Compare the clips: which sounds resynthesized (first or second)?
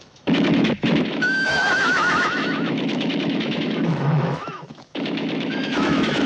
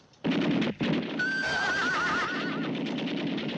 first